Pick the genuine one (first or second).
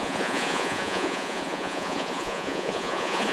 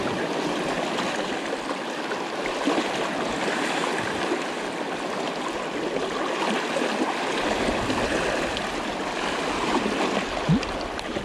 second